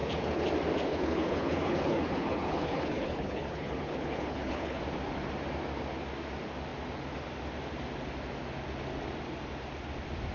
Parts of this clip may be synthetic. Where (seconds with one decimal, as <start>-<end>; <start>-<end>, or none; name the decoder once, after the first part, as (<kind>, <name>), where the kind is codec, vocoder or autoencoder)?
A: 0.0-0.5 (codec, HILCodec); 0.9-4.8